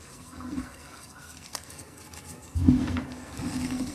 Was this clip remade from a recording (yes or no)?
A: yes